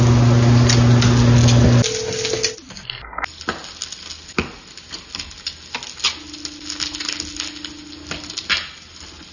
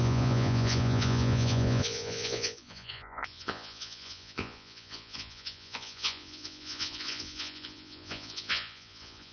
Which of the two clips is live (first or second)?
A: first